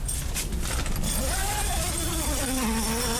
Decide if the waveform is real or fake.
real